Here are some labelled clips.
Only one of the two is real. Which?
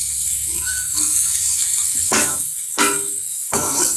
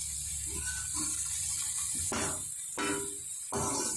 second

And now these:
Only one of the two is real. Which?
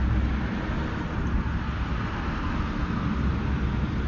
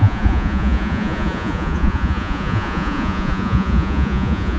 first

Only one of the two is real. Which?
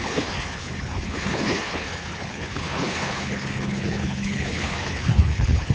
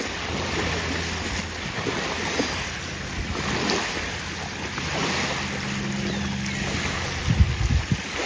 second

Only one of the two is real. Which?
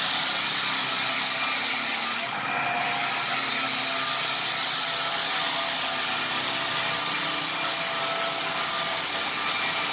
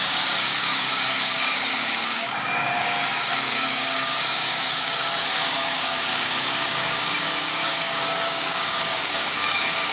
first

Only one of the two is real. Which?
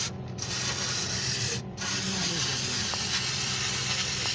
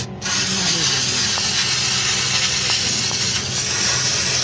second